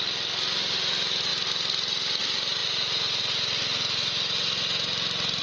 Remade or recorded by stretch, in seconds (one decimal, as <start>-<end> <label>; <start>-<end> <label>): 0.0-5.4 recorded